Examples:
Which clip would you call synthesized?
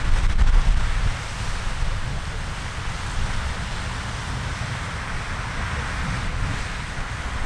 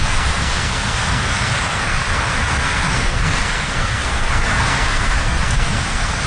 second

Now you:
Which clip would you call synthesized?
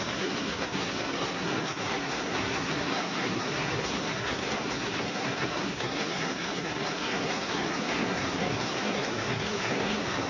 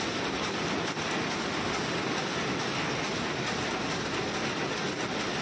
first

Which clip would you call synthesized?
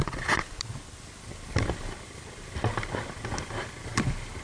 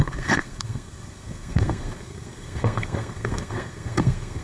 second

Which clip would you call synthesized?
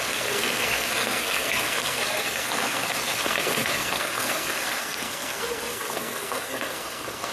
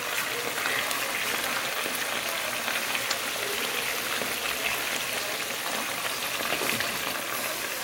first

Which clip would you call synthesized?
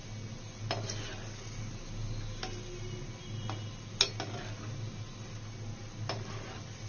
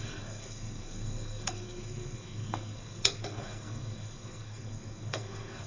second